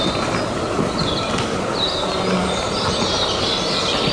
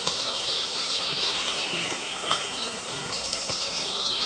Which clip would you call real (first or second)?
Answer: first